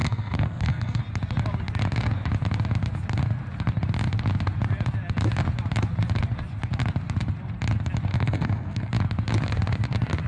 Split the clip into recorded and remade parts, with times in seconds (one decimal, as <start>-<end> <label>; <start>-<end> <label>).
0.0-1.0 remade; 1.0-8.1 recorded; 8.1-8.9 remade; 8.9-10.3 recorded